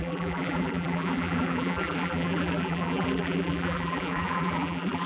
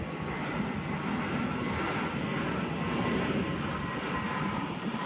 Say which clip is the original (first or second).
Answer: second